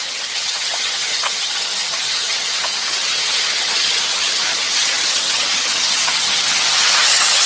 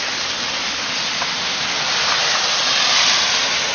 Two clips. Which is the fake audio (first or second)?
first